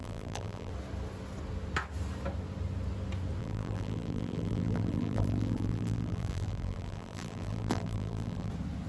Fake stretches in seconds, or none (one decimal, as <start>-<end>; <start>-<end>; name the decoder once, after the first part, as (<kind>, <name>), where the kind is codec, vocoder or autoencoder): 0.0-0.7 (vocoder, BigVGAN v2); 3.4-8.5